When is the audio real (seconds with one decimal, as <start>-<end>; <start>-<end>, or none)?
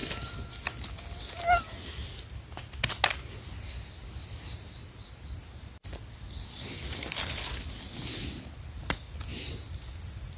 0.0-9.3; 9.9-10.4